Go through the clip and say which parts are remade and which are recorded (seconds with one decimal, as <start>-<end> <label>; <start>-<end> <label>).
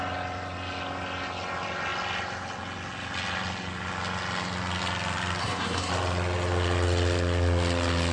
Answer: 0.0-5.4 recorded; 5.4-5.9 remade; 5.9-8.1 recorded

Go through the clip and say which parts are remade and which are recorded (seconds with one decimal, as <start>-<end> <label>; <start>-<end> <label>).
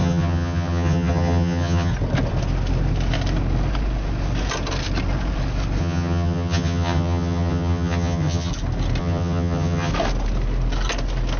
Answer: 0.0-1.9 remade; 1.9-5.8 recorded; 5.8-8.5 remade; 8.5-9.0 recorded; 9.0-9.9 remade; 9.9-11.4 recorded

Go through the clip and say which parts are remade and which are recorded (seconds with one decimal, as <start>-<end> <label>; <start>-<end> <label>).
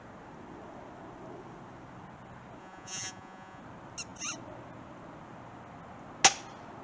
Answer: 0.0-2.6 recorded; 2.6-3.6 remade; 3.6-6.8 recorded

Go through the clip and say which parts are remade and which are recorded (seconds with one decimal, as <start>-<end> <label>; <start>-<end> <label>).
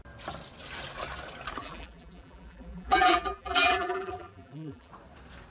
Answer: 0.0-1.6 recorded; 1.6-4.9 remade; 4.9-5.5 recorded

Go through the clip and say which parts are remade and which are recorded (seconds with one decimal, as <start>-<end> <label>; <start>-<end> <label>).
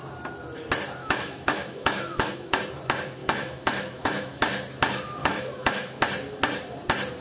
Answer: 0.0-1.0 recorded; 1.0-2.6 remade; 2.6-3.2 recorded; 3.2-4.4 remade; 4.4-5.2 recorded; 5.2-6.0 remade; 6.0-7.2 recorded